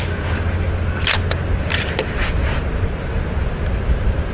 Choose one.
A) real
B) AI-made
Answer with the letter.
A